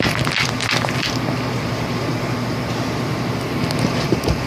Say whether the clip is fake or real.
real